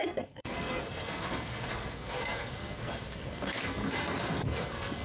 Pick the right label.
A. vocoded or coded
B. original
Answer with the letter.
A